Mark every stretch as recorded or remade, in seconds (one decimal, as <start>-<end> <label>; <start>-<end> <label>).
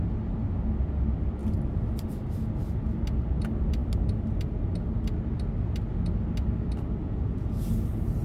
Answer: 0.0-7.0 recorded; 7.0-7.6 remade; 7.6-8.2 recorded